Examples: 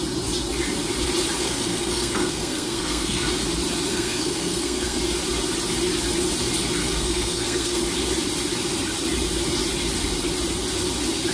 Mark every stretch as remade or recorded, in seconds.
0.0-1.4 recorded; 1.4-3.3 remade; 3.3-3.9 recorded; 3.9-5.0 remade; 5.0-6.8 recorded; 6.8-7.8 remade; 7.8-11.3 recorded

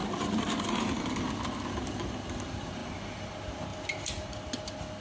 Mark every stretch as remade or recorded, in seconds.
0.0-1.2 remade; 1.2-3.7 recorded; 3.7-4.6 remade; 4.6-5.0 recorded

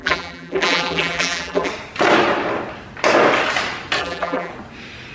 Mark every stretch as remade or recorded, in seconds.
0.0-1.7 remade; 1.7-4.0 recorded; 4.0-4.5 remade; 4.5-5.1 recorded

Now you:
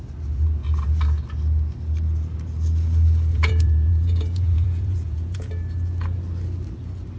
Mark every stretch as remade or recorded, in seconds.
0.0-3.3 recorded; 3.3-5.5 remade; 5.5-7.2 recorded

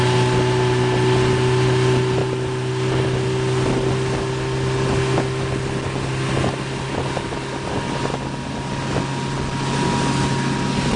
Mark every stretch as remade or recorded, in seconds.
0.0-11.0 recorded